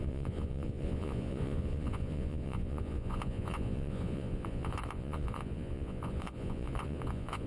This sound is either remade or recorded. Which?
remade